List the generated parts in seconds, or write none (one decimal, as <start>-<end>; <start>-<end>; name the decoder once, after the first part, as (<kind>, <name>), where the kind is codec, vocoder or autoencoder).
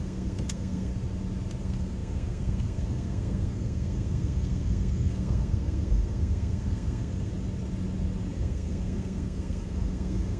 0.0-0.9 (codec, SNAC); 1.6-7.3; 8.3-10.4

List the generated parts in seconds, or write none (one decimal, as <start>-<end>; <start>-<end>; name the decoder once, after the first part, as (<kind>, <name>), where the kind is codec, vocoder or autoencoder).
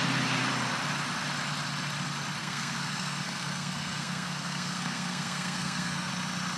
2.4-6.1 (codec, SNAC)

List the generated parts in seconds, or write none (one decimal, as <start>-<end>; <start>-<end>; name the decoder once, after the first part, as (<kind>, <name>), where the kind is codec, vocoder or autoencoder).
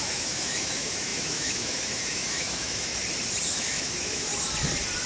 0.0-2.9 (autoencoder, DAC-VAE); 3.5-4.3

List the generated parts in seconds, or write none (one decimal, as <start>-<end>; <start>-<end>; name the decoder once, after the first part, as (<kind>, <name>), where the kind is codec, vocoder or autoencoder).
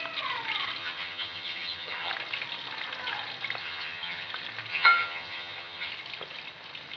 0.8-2.1 (vocoder, HiFi-GAN); 3.6-4.3; 4.7-5.9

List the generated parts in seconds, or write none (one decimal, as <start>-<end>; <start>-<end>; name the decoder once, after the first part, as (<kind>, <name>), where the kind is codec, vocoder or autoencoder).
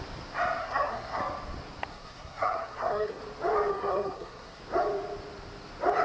0.6-1.2 (codec, SNAC); 1.9-3.2; 3.7-4.6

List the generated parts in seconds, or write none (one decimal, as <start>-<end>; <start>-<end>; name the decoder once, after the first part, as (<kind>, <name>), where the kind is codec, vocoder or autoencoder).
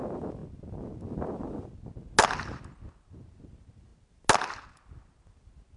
none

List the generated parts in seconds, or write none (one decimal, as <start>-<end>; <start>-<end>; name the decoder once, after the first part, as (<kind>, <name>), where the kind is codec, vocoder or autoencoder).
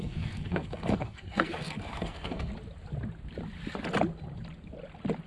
0.0-2.5 (codec, SNAC)